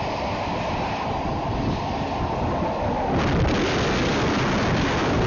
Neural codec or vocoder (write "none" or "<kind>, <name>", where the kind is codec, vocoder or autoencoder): none